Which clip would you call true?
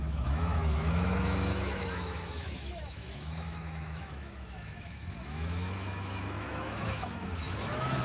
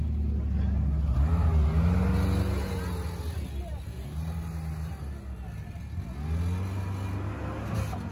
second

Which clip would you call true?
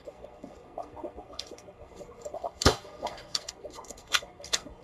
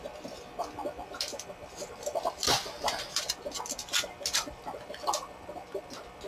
second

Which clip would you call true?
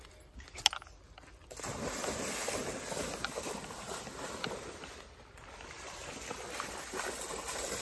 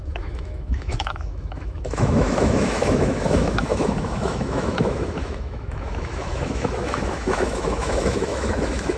first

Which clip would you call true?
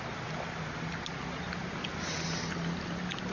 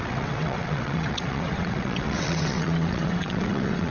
first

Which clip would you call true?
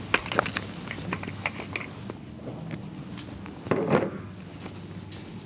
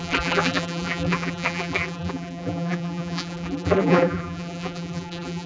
first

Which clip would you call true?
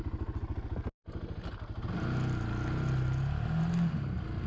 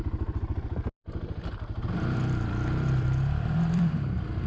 first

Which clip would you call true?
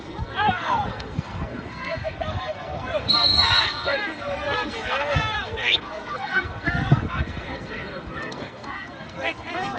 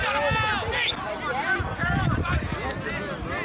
second